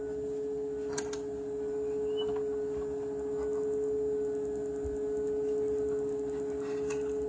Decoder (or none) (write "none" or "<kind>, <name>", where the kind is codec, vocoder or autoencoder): none